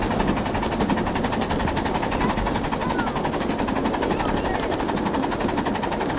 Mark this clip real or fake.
real